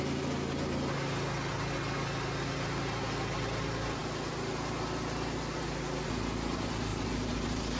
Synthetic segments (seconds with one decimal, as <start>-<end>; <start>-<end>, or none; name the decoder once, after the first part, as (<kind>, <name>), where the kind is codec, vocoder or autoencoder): 6.9-7.8 (vocoder, BigVGAN v2)